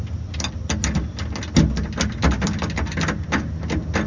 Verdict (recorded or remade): recorded